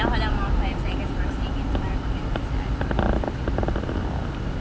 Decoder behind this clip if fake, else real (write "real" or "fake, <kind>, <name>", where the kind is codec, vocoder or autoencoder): real